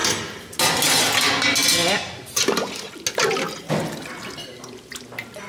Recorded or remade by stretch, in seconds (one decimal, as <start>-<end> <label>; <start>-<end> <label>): 0.0-5.5 recorded